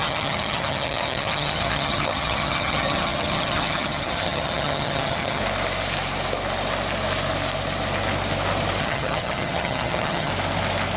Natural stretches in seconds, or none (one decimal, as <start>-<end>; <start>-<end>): 5.4-8.8; 10.3-11.0